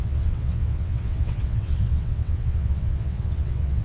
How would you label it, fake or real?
fake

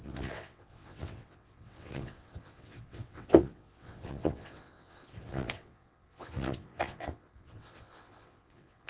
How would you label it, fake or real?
fake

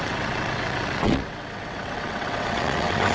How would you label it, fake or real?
fake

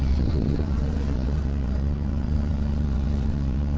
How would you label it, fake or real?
fake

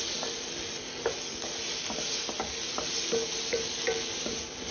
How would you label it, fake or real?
real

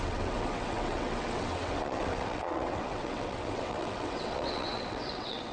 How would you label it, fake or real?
fake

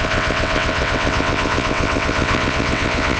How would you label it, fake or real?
fake